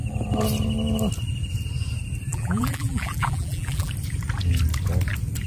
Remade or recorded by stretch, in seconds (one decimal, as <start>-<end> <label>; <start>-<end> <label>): 0.0-2.3 recorded; 2.3-3.9 remade; 3.9-5.5 recorded

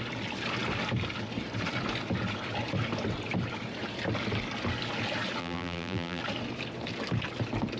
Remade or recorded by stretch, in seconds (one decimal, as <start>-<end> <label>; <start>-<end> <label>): 0.0-5.4 recorded; 5.4-6.2 remade; 6.2-7.8 recorded

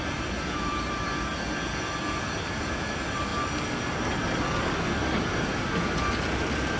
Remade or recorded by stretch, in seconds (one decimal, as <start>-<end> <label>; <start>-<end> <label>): 0.0-1.3 remade; 1.3-2.6 recorded; 2.6-3.3 remade; 3.3-6.1 recorded; 6.1-6.8 remade

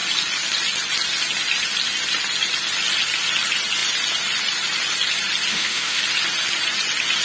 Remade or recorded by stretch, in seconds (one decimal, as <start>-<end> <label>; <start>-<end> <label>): 0.0-5.5 recorded; 5.5-6.0 remade; 6.0-7.2 recorded

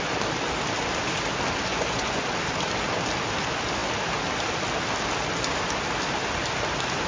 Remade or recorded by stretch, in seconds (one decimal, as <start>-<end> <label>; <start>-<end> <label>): 0.0-1.7 recorded; 1.7-2.2 remade; 2.2-7.1 recorded

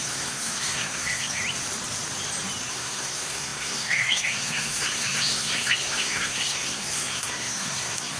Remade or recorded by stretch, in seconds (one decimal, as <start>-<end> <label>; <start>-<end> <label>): 0.0-1.4 remade; 1.4-2.7 recorded; 2.7-8.2 remade

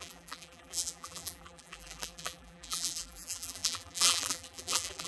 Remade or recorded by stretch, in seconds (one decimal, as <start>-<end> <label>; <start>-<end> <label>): 0.0-5.1 remade

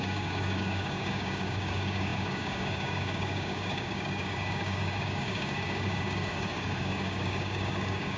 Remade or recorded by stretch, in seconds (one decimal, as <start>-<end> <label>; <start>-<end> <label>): 0.0-8.2 remade